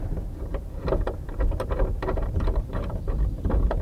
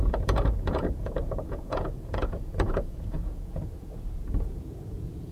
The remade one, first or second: second